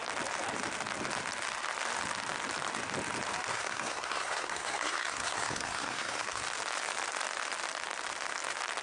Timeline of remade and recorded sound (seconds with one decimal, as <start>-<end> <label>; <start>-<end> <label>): 0.0-3.5 recorded; 3.5-6.4 remade; 6.4-8.8 recorded